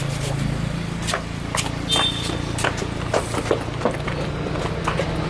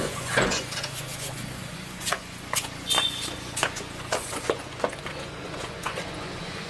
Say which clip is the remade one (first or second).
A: second